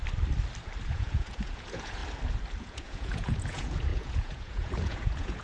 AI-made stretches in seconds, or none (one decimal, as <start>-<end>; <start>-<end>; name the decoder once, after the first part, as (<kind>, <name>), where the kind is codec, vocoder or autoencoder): 0.9-2.0 (vocoder, Vocos); 2.6-5.4